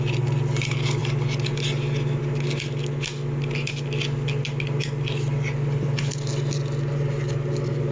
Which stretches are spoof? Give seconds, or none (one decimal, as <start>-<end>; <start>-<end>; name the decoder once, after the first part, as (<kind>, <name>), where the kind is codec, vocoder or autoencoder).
none